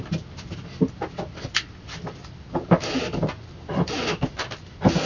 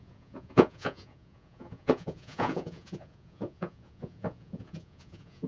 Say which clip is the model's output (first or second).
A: second